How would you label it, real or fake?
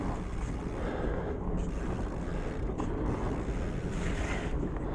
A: real